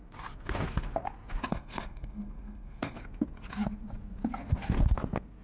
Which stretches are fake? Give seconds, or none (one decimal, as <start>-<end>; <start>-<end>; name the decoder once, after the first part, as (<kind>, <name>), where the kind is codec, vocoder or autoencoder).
1.5-3.0 (codec, SNAC)